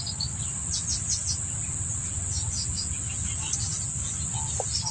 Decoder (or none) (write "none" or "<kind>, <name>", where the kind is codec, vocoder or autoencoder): none